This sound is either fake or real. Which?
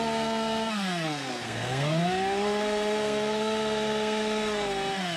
fake